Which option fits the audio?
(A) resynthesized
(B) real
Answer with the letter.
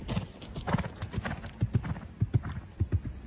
B